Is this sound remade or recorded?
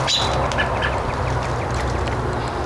recorded